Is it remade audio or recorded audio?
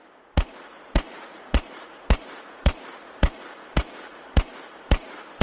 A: remade